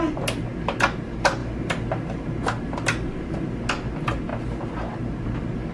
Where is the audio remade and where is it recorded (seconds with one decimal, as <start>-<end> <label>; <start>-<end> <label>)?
0.0-5.7 recorded